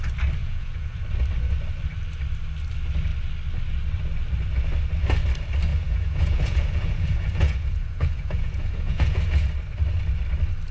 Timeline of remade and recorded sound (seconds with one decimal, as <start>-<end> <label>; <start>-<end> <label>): 0.0-0.4 recorded; 0.4-1.0 remade; 1.0-5.7 recorded; 5.7-9.5 remade; 9.5-10.7 recorded